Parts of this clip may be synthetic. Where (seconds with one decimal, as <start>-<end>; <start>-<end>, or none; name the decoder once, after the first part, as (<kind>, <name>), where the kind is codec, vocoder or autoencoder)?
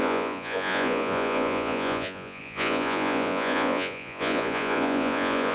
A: 0.0-5.5 (vocoder, Vocos)